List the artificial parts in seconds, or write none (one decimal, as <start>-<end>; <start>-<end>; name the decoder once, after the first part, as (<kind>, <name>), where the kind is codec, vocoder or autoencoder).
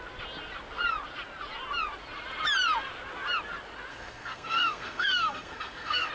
3.9-6.1 (codec, SNAC)